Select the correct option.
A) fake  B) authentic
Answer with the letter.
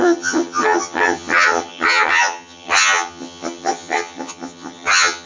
A